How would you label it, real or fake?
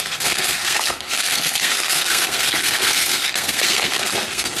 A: fake